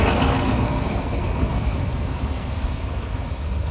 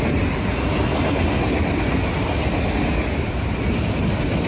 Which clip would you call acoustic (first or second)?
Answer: second